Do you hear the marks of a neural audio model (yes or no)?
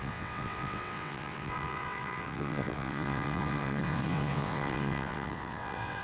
yes